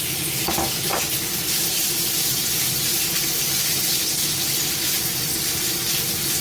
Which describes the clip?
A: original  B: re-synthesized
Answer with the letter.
A